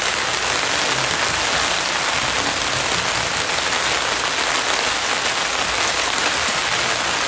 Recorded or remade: recorded